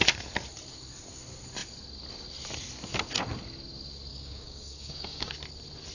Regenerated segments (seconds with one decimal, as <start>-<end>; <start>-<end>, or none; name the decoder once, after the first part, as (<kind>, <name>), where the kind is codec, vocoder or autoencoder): 4.1-5.3 (codec, DAC)